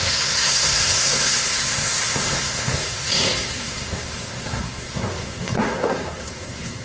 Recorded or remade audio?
remade